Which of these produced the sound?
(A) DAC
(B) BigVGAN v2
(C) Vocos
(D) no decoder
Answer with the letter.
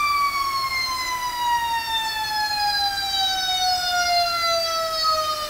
D